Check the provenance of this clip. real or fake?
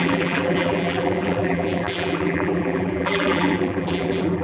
fake